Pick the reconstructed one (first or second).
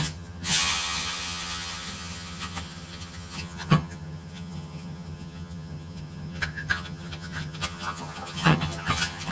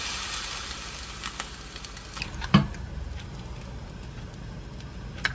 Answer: first